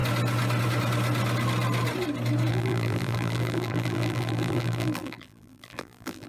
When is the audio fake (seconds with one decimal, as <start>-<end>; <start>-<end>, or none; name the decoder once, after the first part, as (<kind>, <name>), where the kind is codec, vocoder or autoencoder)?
2.5-6.3 (vocoder, BigVGAN v2)